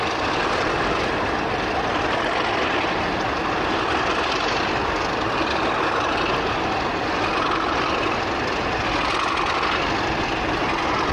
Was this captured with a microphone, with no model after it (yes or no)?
yes